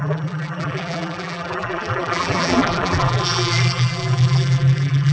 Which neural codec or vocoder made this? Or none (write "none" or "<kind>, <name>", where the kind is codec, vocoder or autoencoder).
vocoder, BigVGAN v2